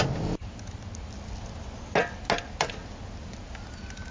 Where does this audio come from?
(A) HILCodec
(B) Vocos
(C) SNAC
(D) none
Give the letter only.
D